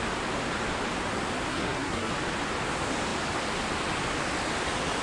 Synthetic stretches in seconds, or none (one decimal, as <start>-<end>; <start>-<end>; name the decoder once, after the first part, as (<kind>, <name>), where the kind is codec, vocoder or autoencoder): 1.5-2.1 (codec, SNAC)